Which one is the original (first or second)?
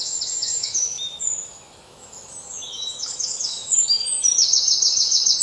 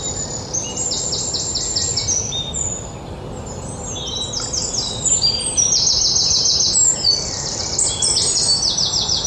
second